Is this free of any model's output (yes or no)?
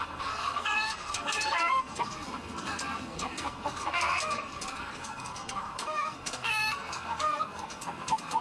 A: no